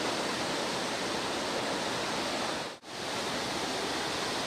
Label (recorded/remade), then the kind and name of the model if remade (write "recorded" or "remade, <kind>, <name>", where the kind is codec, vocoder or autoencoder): recorded